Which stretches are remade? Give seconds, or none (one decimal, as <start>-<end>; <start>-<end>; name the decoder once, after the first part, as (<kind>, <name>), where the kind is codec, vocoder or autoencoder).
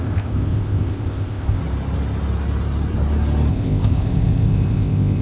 0.0-1.6 (codec, ZipCodec); 3.5-5.2